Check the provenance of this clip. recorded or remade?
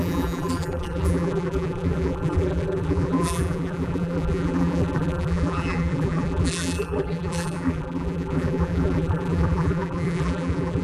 remade